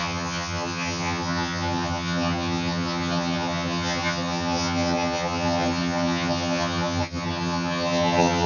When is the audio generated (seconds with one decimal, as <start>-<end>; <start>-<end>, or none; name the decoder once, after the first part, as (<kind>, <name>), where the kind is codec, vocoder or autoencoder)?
0.0-8.5 (vocoder, HiFi-GAN)